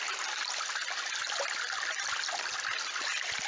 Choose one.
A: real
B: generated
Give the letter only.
A